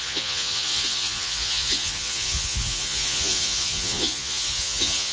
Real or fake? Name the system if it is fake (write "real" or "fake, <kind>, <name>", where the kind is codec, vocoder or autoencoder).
fake, vocoder, Vocos